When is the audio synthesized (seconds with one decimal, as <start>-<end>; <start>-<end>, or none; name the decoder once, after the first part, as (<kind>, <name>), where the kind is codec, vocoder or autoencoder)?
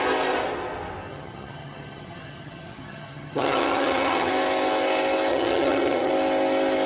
1.1-4.3 (vocoder, HiFi-GAN); 5.3-6.1